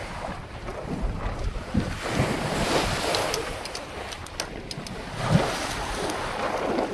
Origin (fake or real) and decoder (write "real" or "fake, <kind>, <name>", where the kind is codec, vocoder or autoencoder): real